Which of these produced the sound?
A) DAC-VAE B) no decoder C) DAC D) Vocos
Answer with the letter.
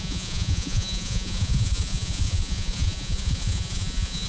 D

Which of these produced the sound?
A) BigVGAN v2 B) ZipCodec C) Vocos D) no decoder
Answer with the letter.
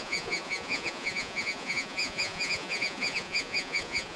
C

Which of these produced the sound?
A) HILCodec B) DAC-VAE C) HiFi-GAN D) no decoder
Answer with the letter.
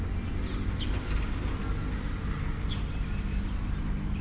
D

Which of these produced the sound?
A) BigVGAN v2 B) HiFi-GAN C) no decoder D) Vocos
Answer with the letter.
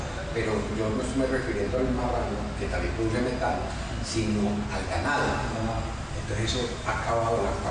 C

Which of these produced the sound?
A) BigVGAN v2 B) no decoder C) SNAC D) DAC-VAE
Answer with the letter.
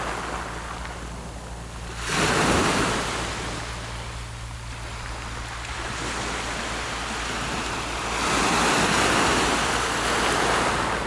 B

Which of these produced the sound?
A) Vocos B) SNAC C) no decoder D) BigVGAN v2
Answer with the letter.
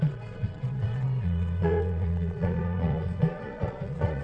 A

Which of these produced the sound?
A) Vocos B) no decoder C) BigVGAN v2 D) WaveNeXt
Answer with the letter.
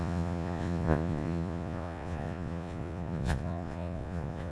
A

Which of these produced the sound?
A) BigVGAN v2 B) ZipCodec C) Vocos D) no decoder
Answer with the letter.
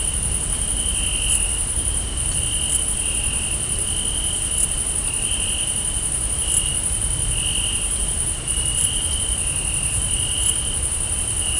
D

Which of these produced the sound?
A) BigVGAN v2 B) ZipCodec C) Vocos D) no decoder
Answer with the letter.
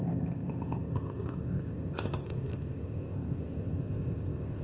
B